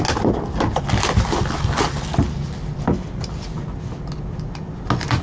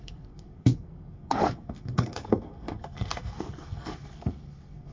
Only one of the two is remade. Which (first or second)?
second